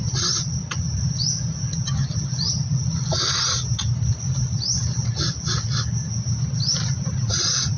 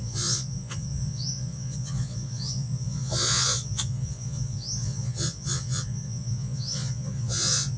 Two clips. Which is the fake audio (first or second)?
second